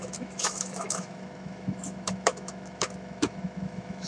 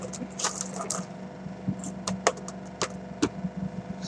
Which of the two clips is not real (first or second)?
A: first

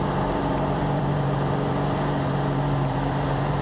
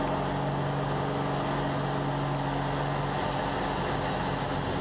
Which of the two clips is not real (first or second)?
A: first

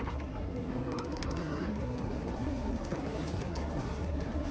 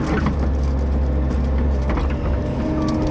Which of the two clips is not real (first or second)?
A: first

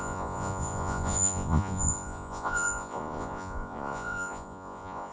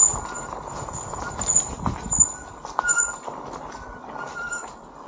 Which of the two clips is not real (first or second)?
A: first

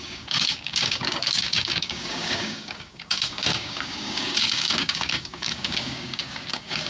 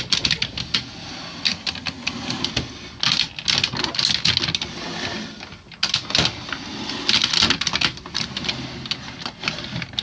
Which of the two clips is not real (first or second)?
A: first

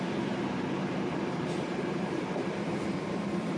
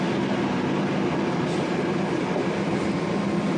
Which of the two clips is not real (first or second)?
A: first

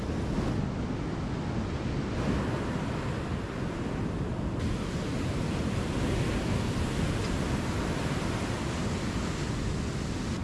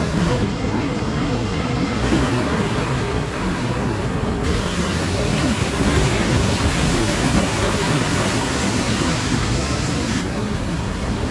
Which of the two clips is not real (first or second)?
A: second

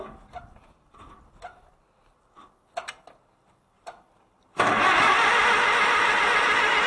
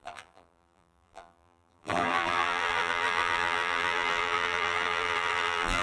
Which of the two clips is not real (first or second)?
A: second